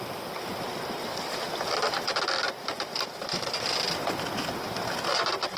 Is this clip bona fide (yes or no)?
yes